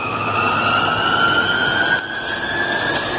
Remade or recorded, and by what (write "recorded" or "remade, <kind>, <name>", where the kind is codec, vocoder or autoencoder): recorded